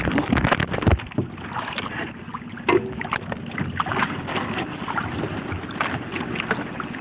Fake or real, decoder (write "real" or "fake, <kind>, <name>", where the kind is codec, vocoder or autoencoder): real